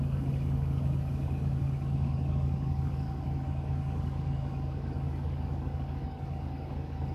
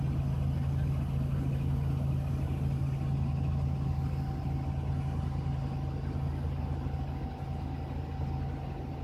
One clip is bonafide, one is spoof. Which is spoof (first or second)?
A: first